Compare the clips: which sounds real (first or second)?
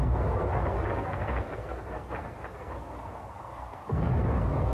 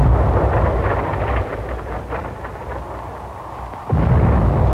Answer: second